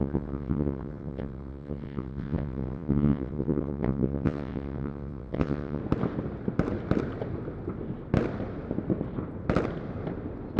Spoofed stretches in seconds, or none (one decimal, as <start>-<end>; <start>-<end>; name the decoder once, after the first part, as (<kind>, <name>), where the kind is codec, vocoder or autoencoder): 0.0-5.8 (vocoder, WaveNeXt)